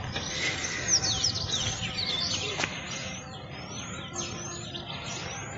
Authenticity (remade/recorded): recorded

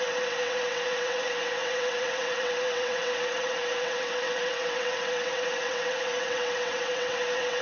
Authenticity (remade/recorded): remade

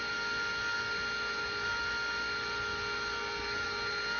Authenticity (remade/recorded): recorded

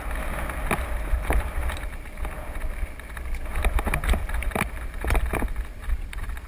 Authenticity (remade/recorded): recorded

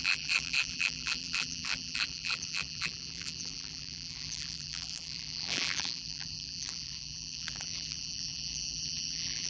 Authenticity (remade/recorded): remade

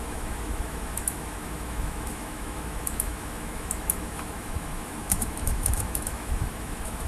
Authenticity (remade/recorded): remade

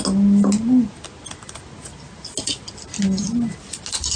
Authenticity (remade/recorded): recorded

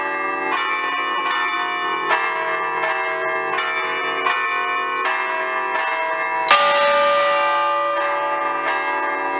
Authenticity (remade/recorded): recorded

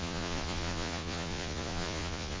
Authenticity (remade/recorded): remade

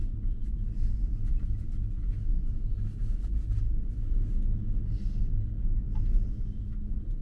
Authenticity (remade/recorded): recorded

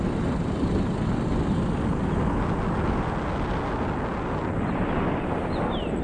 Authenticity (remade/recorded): recorded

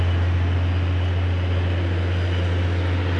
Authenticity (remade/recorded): recorded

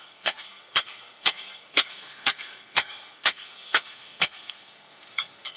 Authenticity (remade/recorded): remade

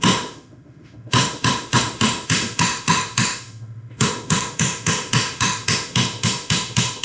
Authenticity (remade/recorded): remade